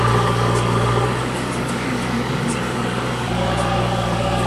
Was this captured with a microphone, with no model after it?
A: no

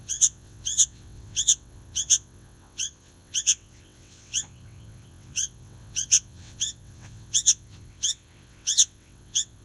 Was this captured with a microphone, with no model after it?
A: no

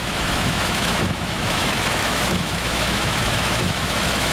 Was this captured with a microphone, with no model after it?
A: no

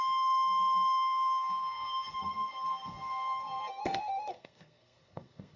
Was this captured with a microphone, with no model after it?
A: no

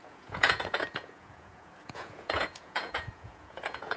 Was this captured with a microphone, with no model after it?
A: no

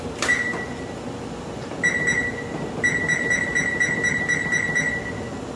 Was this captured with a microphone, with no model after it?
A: yes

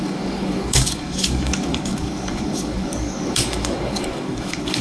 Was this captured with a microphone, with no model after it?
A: no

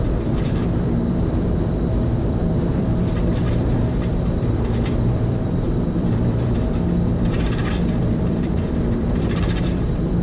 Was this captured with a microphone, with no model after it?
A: no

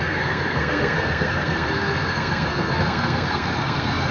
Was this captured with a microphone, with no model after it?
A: no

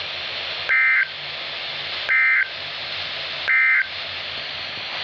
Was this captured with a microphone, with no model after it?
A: yes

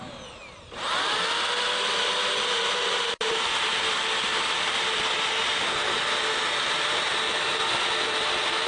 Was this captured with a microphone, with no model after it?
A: yes